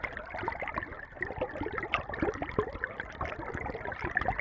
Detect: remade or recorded recorded